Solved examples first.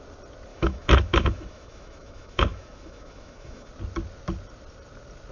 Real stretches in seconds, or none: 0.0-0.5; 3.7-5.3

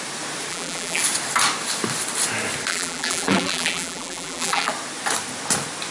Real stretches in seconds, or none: 0.0-0.5; 1.0-2.7; 4.7-5.9